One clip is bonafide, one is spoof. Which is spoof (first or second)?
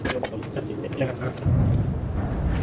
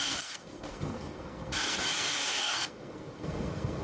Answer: second